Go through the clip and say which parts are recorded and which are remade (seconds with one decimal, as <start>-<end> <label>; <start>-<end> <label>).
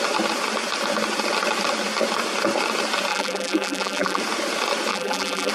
0.0-3.1 recorded; 3.1-4.2 remade; 4.2-4.9 recorded; 4.9-5.5 remade